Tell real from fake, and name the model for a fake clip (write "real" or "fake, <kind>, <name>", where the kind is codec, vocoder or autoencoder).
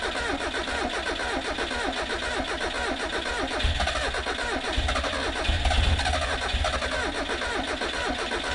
real